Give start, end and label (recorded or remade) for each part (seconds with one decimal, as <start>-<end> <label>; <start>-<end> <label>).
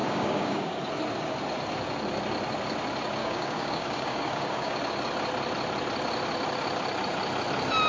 0.0-0.8 remade; 0.8-3.2 recorded; 3.2-4.8 remade; 4.8-7.9 recorded